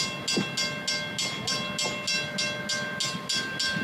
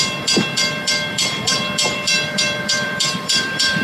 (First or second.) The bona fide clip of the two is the first